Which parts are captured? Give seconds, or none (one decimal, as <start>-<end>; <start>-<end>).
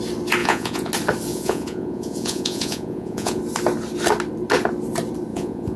0.0-0.4; 0.9-1.3; 3.4-5.3